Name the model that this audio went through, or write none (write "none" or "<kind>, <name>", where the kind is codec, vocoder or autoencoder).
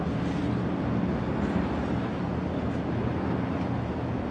none